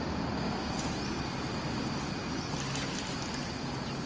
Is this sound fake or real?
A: real